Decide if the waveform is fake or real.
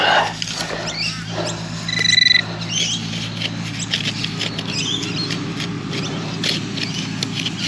real